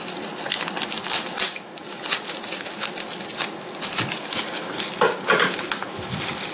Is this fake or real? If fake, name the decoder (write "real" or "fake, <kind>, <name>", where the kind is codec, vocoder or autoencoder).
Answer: real